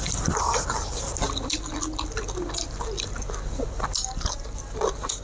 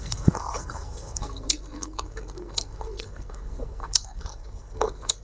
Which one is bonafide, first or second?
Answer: first